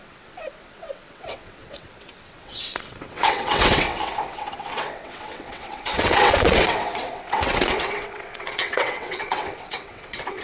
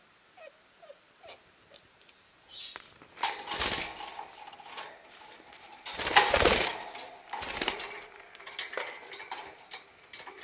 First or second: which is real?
second